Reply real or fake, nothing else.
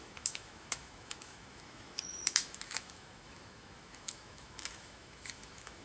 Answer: fake